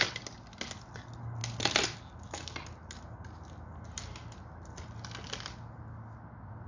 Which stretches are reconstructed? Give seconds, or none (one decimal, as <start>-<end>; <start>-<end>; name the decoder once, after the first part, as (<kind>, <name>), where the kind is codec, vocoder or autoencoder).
none